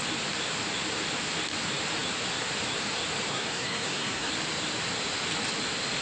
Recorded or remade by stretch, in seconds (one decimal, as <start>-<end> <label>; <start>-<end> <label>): 0.0-3.3 recorded; 3.3-4.3 remade; 4.3-6.0 recorded